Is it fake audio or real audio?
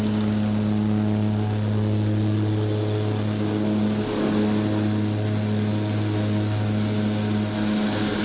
real